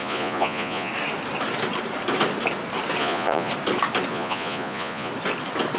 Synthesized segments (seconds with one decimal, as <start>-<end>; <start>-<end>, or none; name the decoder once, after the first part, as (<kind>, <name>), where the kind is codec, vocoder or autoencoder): 0.0-0.9 (vocoder, Vocos); 3.0-3.5; 4.1-5.1